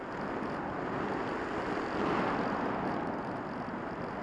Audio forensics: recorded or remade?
recorded